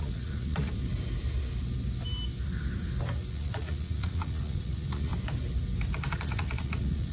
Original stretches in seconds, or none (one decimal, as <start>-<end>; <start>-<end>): 0.7-3.3; 5.1-6.1